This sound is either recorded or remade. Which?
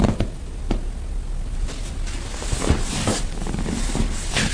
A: recorded